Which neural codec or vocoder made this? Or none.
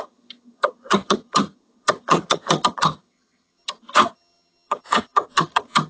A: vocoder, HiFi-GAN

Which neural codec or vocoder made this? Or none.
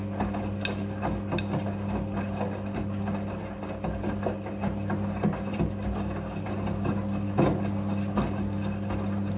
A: none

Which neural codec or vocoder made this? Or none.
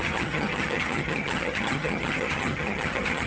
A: vocoder, HiFi-GAN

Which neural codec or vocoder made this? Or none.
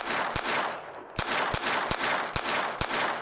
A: none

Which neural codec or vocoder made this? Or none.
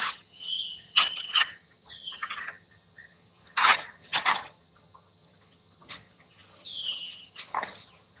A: vocoder, HiFi-GAN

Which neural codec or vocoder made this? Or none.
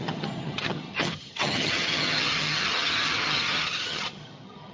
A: vocoder, HiFi-GAN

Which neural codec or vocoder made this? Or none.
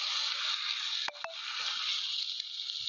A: none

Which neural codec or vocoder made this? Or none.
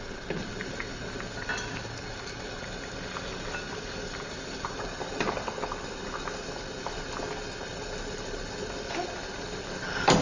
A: none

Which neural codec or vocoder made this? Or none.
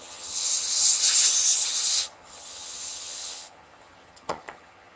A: vocoder, HiFi-GAN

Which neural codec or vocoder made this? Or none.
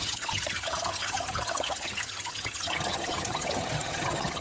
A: vocoder, HiFi-GAN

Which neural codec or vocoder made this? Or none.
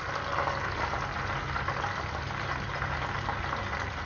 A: none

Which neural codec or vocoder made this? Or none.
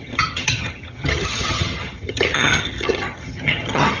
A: vocoder, HiFi-GAN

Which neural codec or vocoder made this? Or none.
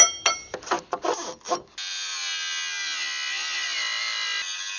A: none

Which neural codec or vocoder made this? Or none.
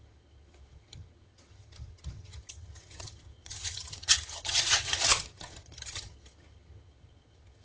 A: vocoder, HiFi-GAN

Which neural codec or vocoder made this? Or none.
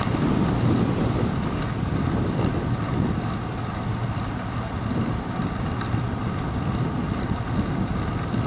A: none